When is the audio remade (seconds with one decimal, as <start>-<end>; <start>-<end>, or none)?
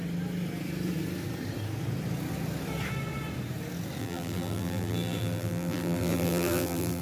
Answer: 4.0-7.0